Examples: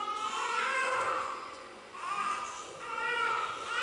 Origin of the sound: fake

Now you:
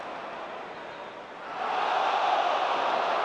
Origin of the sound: real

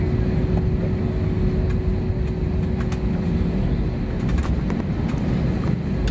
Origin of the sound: real